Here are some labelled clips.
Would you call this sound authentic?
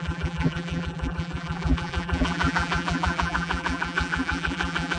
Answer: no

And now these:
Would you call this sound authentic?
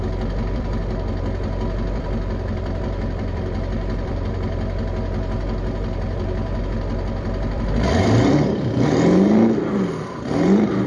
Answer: no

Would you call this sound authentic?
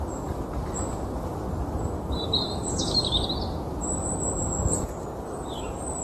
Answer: yes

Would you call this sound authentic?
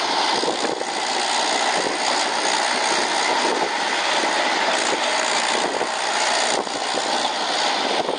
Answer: yes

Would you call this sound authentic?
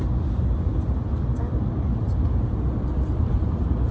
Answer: yes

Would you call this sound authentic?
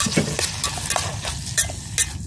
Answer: yes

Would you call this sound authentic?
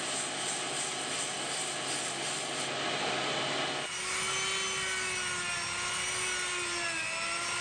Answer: yes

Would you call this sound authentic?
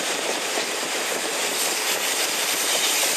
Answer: no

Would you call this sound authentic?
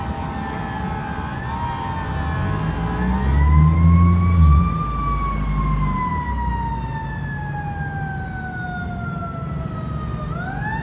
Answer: yes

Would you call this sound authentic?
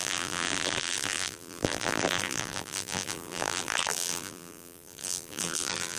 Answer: no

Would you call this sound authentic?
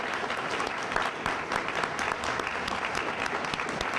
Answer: yes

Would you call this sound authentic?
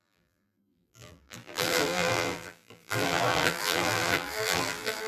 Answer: no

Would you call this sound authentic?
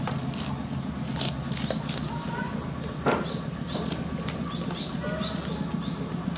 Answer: yes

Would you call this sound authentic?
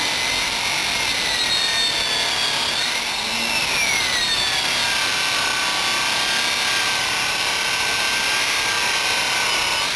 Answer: yes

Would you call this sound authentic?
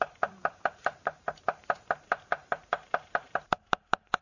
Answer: no